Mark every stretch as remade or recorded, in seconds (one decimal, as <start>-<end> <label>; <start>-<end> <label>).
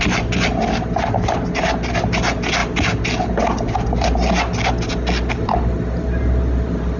0.0-7.0 recorded